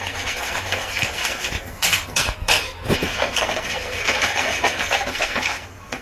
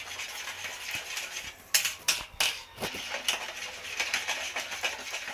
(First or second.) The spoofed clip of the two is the first